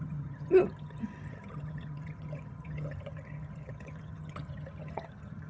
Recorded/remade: remade